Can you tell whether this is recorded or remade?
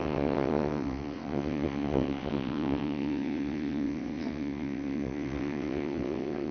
remade